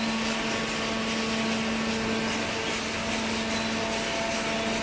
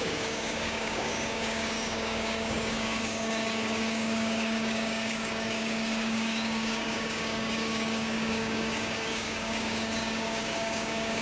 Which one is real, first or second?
first